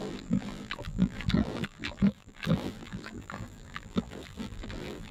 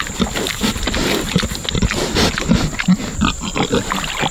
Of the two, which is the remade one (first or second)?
first